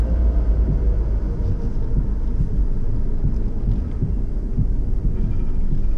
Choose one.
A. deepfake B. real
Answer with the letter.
B